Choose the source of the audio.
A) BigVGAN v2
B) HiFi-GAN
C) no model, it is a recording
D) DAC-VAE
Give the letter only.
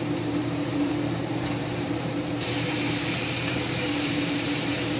A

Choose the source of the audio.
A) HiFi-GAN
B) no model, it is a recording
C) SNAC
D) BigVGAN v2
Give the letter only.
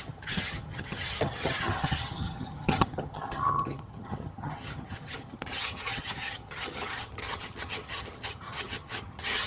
A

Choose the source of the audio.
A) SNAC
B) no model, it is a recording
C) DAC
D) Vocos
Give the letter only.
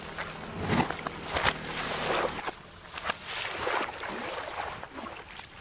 B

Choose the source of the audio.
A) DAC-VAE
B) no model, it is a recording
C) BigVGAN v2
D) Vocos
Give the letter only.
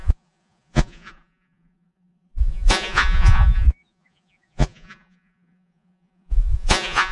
D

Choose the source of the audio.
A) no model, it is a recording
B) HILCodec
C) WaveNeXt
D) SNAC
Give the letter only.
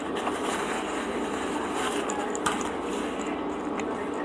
A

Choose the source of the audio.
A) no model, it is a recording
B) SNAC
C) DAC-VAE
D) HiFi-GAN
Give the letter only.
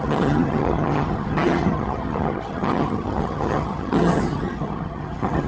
D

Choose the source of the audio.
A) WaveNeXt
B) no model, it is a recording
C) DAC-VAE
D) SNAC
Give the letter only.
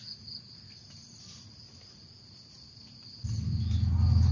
B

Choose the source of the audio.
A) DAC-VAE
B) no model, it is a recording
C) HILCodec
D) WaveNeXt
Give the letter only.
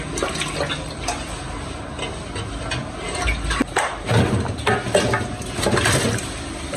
B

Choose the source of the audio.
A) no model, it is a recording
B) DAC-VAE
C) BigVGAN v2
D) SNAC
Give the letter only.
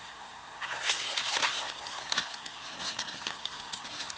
D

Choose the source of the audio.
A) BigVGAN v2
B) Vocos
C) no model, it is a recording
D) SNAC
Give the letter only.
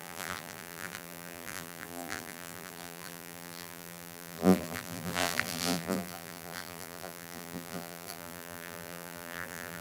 A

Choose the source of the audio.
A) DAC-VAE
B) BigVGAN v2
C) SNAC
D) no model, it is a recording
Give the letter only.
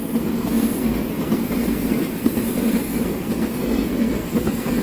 C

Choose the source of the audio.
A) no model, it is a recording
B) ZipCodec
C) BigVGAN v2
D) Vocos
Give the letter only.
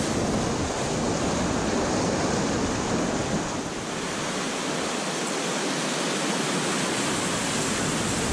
A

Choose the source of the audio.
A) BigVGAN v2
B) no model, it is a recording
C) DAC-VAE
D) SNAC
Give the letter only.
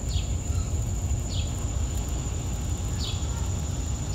B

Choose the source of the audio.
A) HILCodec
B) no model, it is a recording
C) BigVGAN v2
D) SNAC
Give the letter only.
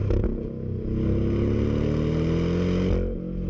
B